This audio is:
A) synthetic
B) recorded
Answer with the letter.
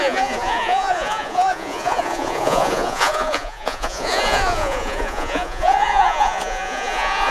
A